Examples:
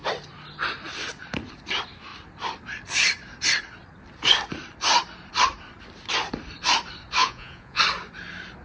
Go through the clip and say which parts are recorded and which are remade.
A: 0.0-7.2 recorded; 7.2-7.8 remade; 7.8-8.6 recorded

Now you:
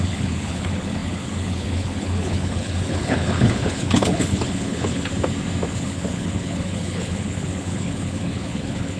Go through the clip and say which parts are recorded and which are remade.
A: 0.0-5.1 remade; 5.1-5.7 recorded; 5.7-9.0 remade

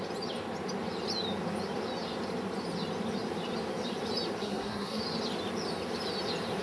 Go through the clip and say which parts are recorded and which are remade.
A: 0.0-4.4 recorded; 4.4-5.0 remade; 5.0-6.6 recorded

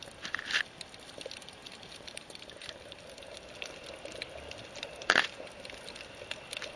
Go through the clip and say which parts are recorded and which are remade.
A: 0.0-1.6 recorded; 1.6-3.0 remade; 3.0-6.8 recorded

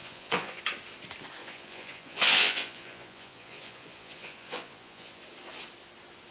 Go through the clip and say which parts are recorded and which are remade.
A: 0.0-0.6 remade; 0.6-1.4 recorded; 1.4-5.2 remade; 5.2-6.3 recorded

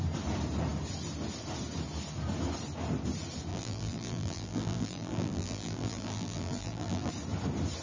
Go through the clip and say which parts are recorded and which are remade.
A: 0.0-3.5 recorded; 3.5-7.1 remade; 7.1-7.8 recorded

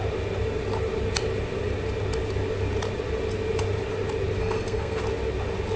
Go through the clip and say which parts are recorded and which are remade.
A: 0.0-4.4 recorded; 4.4-5.0 remade; 5.0-5.8 recorded

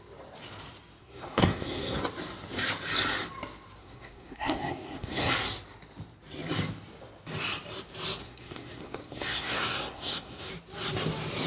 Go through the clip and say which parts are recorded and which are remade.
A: 0.0-1.0 recorded; 1.0-2.0 remade; 2.0-3.8 recorded; 3.8-5.3 remade; 5.3-8.2 recorded; 8.2-10.5 remade; 10.5-11.5 recorded